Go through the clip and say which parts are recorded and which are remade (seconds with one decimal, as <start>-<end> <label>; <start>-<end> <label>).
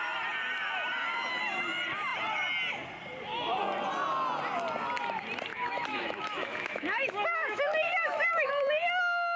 0.0-5.5 recorded; 5.5-8.5 remade; 8.5-9.4 recorded